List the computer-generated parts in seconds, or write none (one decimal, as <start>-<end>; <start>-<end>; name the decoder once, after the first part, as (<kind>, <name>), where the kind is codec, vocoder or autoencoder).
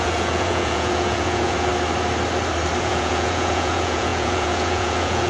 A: 0.0-1.7 (vocoder, Vocos); 2.8-5.3